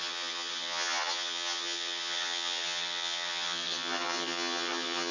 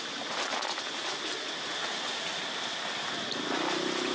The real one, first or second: second